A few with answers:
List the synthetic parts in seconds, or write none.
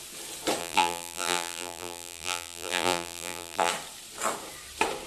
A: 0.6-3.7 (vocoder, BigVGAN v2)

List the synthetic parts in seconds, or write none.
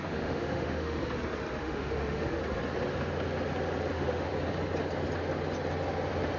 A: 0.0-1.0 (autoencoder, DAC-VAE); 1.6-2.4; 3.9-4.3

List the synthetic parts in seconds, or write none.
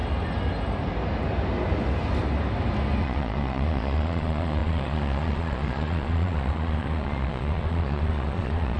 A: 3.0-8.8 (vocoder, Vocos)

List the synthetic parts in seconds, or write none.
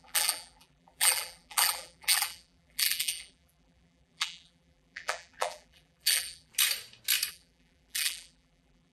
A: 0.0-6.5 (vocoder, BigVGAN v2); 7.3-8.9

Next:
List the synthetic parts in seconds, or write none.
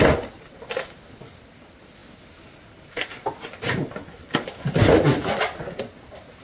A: none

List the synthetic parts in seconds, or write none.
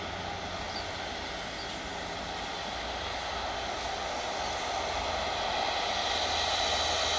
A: none